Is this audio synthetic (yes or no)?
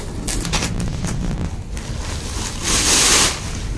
no